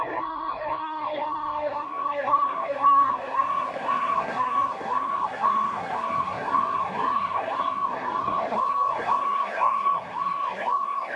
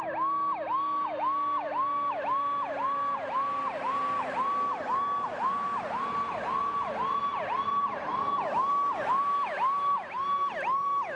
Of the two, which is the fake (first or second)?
first